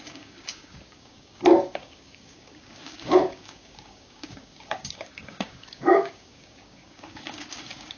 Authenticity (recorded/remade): remade